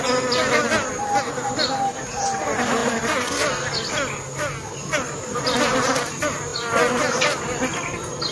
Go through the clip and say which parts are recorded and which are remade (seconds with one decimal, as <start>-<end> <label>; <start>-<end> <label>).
0.0-8.3 recorded